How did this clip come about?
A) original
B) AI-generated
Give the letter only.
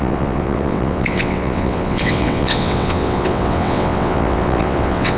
B